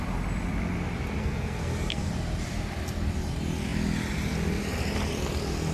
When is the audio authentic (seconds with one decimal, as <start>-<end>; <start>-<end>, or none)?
0.0-1.2; 2.1-5.7